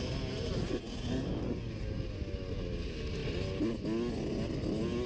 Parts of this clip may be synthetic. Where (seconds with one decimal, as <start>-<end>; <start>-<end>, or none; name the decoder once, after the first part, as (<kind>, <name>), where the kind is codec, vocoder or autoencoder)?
none